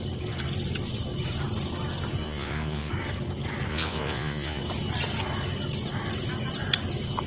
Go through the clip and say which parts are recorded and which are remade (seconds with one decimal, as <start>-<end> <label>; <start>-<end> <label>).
0.0-2.2 recorded; 2.2-2.9 remade; 2.9-3.7 recorded; 3.7-4.6 remade; 4.6-7.3 recorded